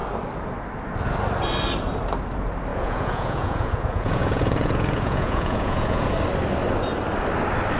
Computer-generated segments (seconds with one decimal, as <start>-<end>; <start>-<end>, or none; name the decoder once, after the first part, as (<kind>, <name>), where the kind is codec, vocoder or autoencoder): 2.7-6.1 (vocoder, Vocos)

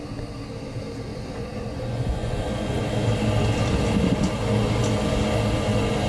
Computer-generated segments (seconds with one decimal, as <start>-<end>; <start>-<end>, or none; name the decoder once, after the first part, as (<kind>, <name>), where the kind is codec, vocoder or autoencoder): 1.1-2.8 (vocoder, Vocos)

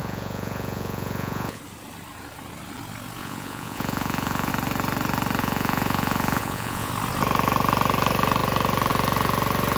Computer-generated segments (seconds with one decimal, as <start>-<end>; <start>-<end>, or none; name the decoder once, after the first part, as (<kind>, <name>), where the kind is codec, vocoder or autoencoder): 0.0-1.6 (vocoder, Vocos); 3.2-4.5; 5.4-6.9

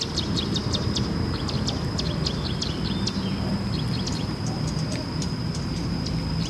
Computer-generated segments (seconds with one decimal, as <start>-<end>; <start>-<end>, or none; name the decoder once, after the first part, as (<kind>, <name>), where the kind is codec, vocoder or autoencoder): 0.0-6.5 (vocoder, BigVGAN v2)

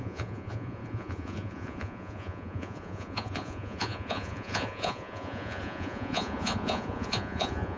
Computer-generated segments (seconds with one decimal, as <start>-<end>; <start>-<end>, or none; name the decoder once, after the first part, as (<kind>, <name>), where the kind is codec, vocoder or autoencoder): 0.0-7.8 (vocoder, Vocos)

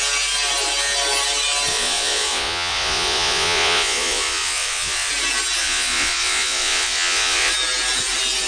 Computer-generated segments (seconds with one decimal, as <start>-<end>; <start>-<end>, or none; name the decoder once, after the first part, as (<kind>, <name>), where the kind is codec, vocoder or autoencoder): 1.7-5.1 (vocoder, Vocos); 5.6-7.5

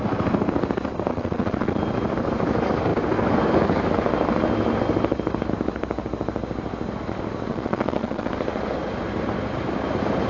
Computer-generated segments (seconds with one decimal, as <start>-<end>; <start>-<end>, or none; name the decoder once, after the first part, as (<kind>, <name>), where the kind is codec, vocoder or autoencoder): 1.1-1.8 (vocoder, Vocos); 7.5-8.3

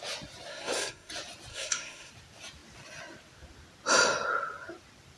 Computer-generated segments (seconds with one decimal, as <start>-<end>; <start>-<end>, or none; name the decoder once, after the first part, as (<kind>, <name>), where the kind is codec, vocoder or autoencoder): 0.5-1.1 (codec, SNAC); 1.5-2.1